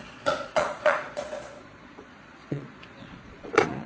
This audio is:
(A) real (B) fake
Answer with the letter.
B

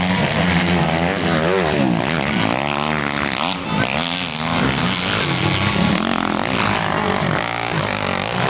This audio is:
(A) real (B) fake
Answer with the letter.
A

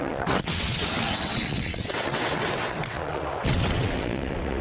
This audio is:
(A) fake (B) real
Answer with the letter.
A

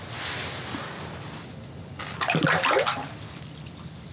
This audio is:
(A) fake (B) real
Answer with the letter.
B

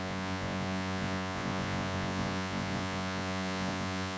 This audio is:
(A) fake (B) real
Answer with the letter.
A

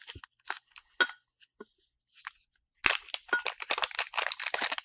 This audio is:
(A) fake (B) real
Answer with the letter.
B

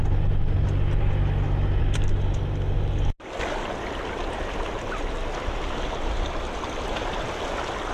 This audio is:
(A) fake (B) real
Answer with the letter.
B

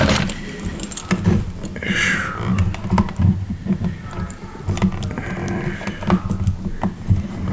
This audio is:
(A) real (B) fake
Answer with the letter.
A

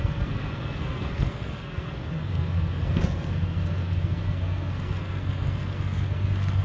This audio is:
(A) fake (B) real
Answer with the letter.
A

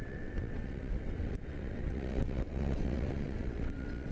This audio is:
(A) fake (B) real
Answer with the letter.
A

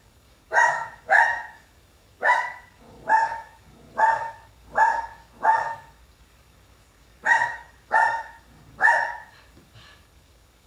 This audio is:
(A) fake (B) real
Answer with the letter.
A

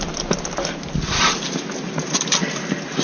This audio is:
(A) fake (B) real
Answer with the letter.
B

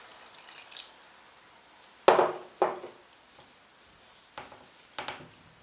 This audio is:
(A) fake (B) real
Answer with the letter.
B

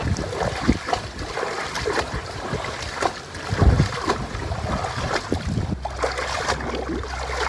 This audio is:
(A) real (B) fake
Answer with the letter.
A